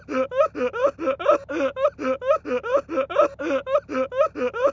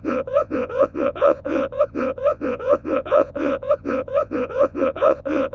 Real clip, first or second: first